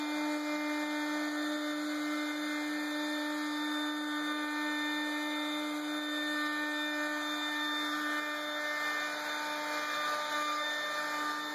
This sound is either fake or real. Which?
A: real